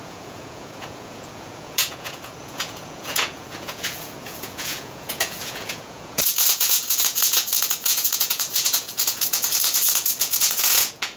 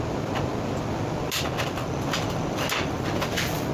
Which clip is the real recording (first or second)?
second